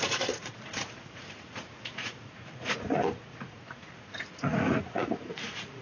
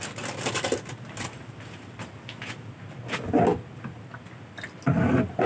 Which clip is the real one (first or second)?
second